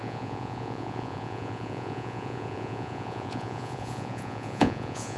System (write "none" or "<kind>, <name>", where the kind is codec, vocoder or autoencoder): vocoder, Vocos